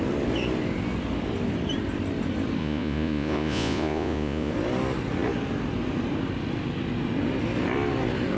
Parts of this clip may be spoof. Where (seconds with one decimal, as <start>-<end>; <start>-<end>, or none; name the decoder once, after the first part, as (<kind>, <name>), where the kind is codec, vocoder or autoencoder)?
2.6-4.5 (vocoder, Vocos)